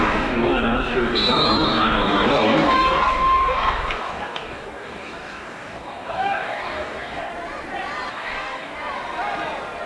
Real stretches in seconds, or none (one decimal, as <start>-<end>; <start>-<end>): 7.3-8.1; 8.7-9.9